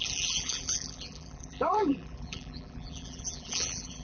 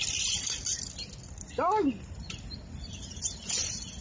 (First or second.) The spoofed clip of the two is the first